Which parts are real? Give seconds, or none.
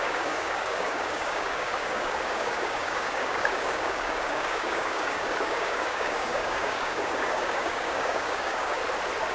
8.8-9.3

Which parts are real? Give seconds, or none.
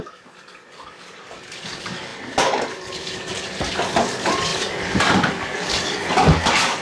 none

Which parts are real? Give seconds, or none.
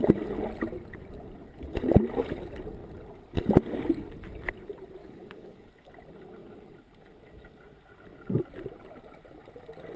0.0-5.0; 5.7-10.0